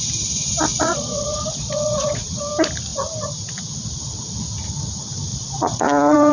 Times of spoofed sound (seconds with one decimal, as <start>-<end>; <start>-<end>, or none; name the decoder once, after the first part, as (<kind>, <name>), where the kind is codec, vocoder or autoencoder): 0.7-2.4 (vocoder, Vocos); 5.3-6.3